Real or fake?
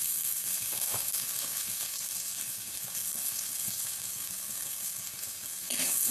fake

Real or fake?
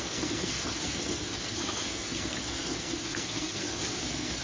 fake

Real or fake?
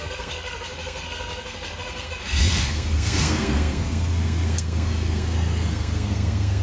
fake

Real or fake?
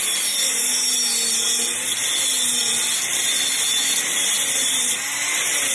real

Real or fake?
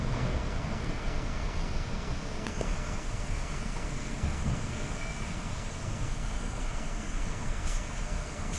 fake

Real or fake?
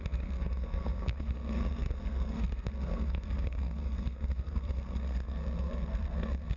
fake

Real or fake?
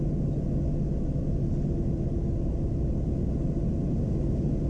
real